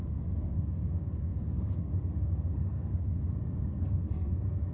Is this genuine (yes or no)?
no